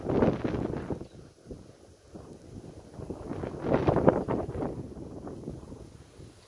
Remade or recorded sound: recorded